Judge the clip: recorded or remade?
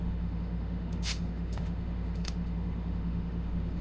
remade